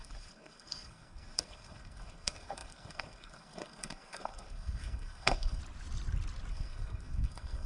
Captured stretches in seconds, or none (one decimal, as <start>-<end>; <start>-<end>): 5.6-6.5